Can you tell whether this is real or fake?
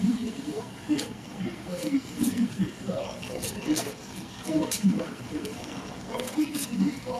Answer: fake